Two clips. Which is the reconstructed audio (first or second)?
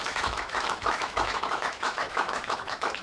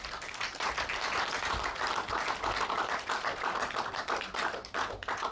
first